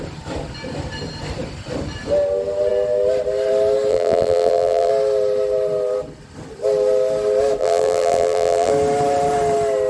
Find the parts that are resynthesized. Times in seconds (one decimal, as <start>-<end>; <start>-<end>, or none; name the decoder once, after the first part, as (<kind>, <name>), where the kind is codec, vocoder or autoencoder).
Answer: 3.9-4.9 (vocoder, BigVGAN v2); 7.6-8.7